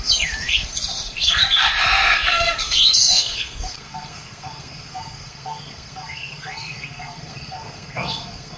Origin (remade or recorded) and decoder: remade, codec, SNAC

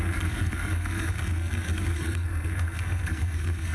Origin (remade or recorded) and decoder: remade, codec, SNAC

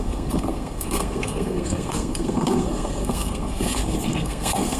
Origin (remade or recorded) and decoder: remade, codec, SNAC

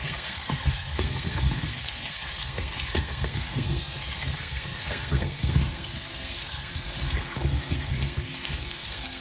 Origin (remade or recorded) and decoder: remade, codec, SNAC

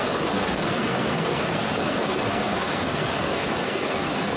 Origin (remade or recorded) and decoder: remade, codec, SNAC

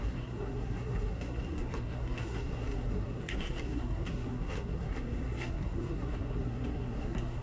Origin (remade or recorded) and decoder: remade, codec, SNAC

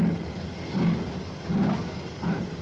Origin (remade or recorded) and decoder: recorded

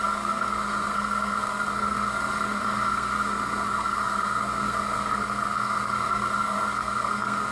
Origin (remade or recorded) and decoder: remade, codec, SNAC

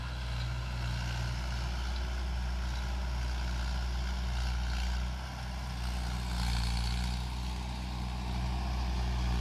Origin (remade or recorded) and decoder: recorded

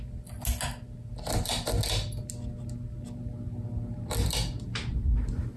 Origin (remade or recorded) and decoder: recorded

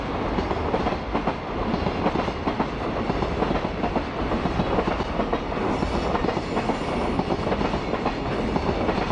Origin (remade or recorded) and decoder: recorded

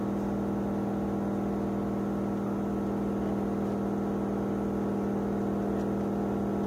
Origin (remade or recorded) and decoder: recorded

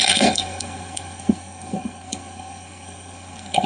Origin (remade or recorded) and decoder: remade, codec, SNAC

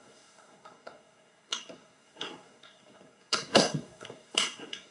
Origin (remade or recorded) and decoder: remade, codec, SNAC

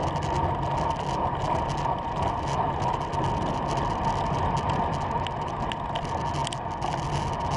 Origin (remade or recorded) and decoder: recorded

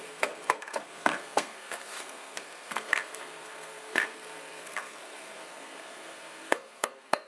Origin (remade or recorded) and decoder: remade, codec, SNAC